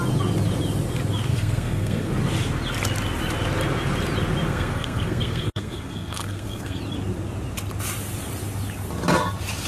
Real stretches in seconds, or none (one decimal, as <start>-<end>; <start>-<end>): 0.0-1.3; 2.1-4.5; 6.8-9.7